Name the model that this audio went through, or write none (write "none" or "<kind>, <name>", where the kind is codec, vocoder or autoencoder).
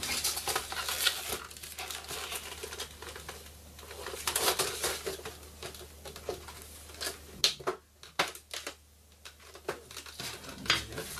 none